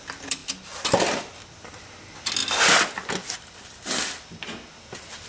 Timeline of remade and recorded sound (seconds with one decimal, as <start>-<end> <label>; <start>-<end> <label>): 0.0-0.4 remade; 0.4-1.2 recorded; 1.2-2.4 remade; 2.4-4.7 recorded; 4.7-5.3 remade